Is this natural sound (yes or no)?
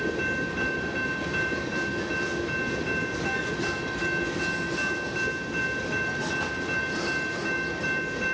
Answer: yes